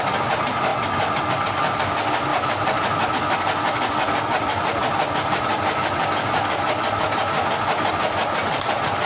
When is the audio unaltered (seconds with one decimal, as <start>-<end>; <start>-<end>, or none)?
0.0-0.7; 1.2-2.3; 3.1-3.6; 8.7-9.1